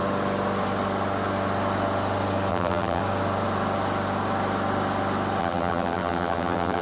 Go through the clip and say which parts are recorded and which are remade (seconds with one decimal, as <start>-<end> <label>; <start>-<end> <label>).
0.0-2.5 recorded; 2.5-3.0 remade; 3.0-5.4 recorded; 5.4-6.8 remade